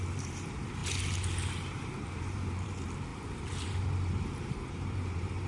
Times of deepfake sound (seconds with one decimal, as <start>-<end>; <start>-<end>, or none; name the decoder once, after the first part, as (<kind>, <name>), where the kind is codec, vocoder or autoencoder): 0.0-0.8 (vocoder, BigVGAN v2); 1.5-5.5